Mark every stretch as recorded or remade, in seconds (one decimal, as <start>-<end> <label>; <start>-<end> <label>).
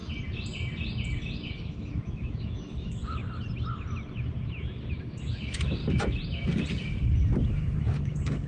0.0-1.5 recorded; 1.5-3.2 remade; 3.2-5.0 recorded; 5.0-5.8 remade; 5.8-7.5 recorded; 7.5-8.5 remade